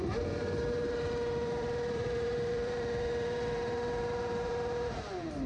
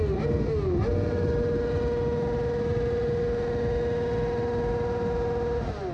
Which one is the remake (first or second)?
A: first